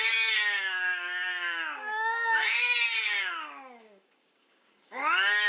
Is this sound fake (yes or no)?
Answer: yes